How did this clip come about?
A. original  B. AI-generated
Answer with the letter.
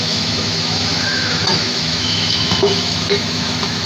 B